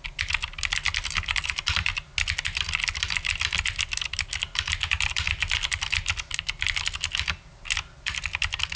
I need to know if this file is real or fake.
real